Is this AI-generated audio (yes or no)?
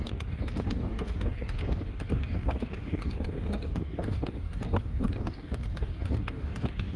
yes